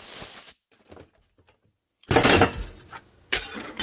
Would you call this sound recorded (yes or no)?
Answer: yes